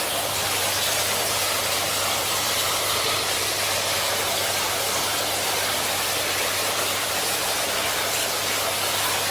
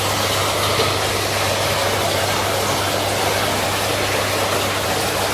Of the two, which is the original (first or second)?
second